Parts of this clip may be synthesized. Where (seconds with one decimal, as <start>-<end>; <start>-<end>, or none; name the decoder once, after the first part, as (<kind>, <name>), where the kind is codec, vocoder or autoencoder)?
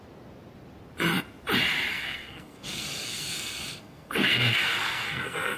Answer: 1.9-5.6 (codec, SNAC)